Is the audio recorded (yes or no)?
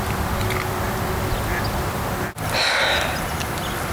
yes